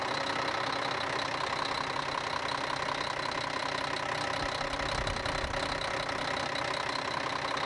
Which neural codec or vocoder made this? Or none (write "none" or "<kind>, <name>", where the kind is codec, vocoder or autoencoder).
none